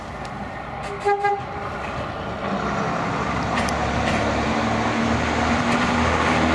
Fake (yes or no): no